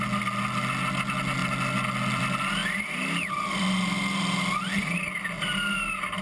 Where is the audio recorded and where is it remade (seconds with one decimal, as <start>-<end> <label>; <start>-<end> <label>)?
0.0-6.2 recorded